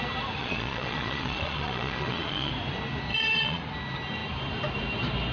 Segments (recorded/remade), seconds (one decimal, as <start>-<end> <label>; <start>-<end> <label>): 0.0-0.4 recorded; 0.4-2.5 remade; 2.5-3.1 recorded; 3.1-3.6 remade; 3.6-5.3 recorded